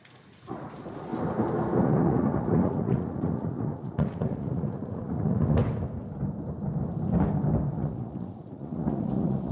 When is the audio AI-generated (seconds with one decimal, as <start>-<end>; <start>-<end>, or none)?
0.0-1.1; 1.8-5.6; 7.7-9.5